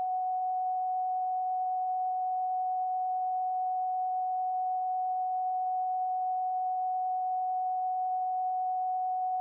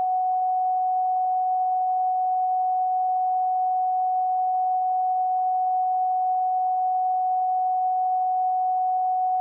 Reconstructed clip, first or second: first